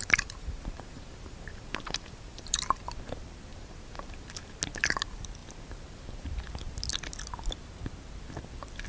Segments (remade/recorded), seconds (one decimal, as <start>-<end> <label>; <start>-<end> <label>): 0.0-2.8 remade; 2.8-3.5 recorded; 3.5-4.5 remade; 4.5-8.9 recorded